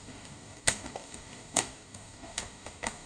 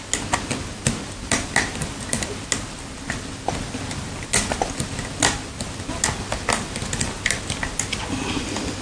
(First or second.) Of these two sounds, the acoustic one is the second